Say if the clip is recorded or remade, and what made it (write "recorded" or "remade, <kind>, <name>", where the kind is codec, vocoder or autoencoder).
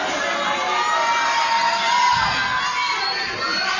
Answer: recorded